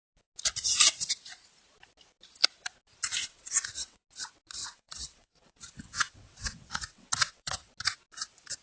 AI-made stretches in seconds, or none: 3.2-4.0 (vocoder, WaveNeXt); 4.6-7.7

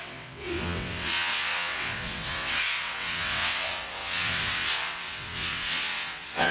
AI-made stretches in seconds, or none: 0.0-6.5 (vocoder, WaveNeXt)

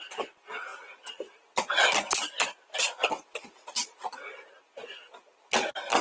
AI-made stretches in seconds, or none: none

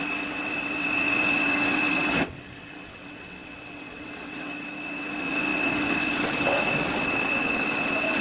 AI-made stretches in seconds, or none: 0.0-8.2 (vocoder, WaveNeXt)

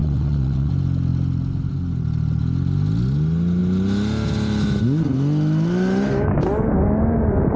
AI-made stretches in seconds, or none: 0.0-0.7 (vocoder, WaveNeXt)